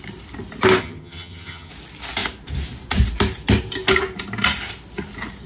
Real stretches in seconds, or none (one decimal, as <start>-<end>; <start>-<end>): 0.0-0.8; 1.7-5.5